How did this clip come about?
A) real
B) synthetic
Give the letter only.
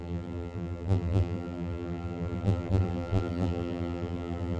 B